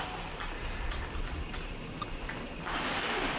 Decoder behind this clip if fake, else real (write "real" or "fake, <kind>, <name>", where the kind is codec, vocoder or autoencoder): real